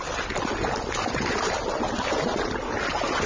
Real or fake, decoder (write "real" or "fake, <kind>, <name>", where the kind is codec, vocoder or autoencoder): real